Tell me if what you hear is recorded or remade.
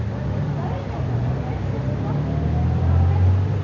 recorded